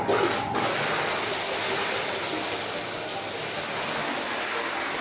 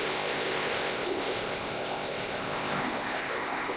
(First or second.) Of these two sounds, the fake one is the second